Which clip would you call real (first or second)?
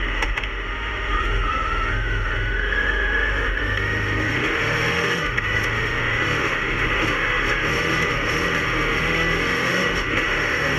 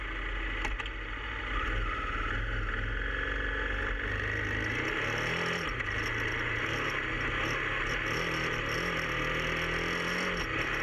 second